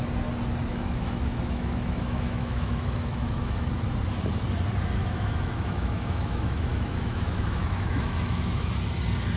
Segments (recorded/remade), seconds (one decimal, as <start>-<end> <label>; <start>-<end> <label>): 0.0-0.7 recorded; 0.7-3.7 remade; 3.7-5.0 recorded; 5.0-8.7 remade; 8.7-9.4 recorded